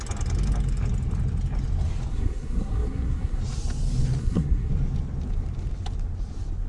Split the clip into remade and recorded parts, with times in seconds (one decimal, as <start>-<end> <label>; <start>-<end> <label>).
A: 0.0-2.1 recorded; 2.1-3.4 remade; 3.4-4.2 recorded; 4.2-4.7 remade; 4.7-6.7 recorded